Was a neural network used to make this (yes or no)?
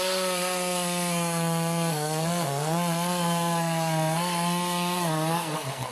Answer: yes